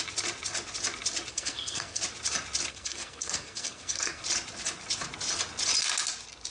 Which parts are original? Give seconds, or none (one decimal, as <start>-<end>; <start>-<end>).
0.0-1.3; 2.0-2.7; 4.2-6.5